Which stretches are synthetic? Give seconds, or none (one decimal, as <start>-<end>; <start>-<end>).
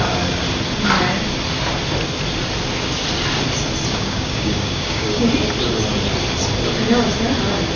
3.9-5.3